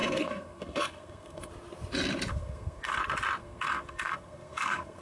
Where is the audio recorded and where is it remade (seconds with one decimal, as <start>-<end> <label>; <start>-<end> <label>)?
0.0-1.5 remade; 1.5-2.3 recorded; 2.3-3.0 remade; 3.0-3.4 recorded; 3.4-5.0 remade